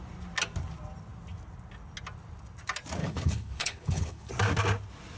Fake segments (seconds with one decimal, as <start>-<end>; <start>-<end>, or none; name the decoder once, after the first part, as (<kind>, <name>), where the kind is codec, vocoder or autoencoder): 3.0-4.3 (codec, HILCodec)

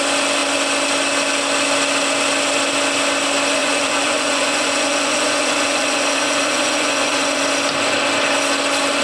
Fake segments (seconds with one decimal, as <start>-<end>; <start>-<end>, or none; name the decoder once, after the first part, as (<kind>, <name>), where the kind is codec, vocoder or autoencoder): 3.6-7.4 (vocoder, Vocos)

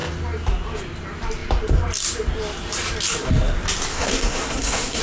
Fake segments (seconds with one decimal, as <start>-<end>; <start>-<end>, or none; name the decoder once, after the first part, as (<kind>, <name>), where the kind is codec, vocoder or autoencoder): 3.9-5.0 (codec, SNAC)

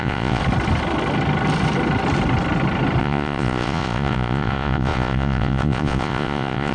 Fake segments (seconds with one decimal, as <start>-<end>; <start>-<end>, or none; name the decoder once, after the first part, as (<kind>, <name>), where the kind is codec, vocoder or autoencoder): 0.0-0.4 (vocoder, Vocos); 3.0-6.7

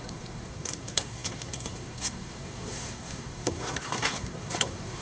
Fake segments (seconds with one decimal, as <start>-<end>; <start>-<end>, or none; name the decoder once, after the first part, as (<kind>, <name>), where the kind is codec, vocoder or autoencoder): 0.0-5.0 (codec, SNAC)